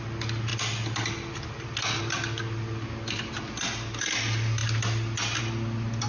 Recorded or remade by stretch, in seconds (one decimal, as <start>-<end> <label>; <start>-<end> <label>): 0.0-6.1 recorded